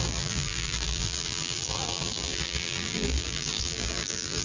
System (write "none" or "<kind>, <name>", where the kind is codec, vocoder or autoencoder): vocoder, BigVGAN v2